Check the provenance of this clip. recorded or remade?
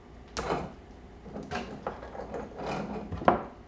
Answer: recorded